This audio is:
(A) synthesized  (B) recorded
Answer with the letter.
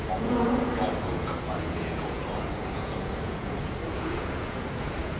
A